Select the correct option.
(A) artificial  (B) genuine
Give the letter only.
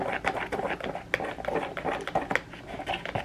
B